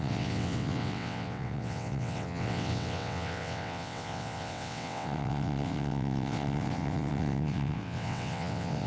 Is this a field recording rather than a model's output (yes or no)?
no